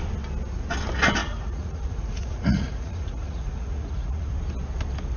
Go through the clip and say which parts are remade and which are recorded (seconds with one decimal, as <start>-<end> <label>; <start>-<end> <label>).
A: 0.0-1.2 recorded; 1.2-4.3 remade; 4.3-5.2 recorded